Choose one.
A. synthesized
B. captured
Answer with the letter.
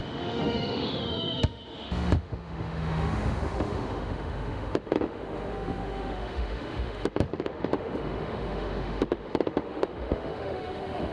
A